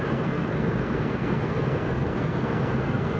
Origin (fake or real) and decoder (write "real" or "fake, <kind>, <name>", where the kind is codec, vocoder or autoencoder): fake, codec, SNAC